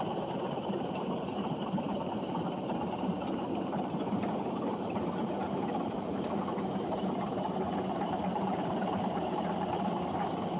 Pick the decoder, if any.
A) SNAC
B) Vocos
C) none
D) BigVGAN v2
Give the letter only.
D